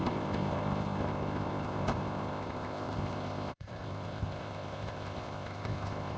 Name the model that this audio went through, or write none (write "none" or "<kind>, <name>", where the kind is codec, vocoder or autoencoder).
codec, ZipCodec